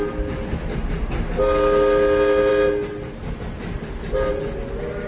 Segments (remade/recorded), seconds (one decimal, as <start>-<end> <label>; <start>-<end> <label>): 0.0-5.1 recorded